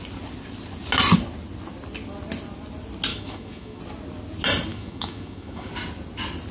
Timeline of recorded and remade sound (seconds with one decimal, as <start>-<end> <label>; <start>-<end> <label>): 0.0-3.1 recorded; 3.1-3.8 remade; 3.8-4.7 recorded; 4.7-5.7 remade; 5.7-6.5 recorded